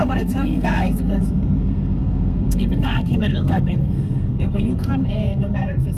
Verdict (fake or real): fake